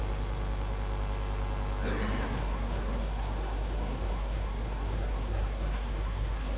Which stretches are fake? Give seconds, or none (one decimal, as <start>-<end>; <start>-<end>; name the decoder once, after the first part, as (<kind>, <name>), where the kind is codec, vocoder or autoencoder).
2.2-6.6 (codec, SNAC)